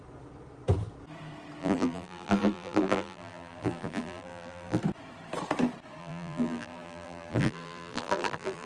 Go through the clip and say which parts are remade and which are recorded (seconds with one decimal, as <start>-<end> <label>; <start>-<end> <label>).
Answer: 0.0-1.6 recorded; 1.6-4.8 remade; 4.8-6.0 recorded; 6.0-8.7 remade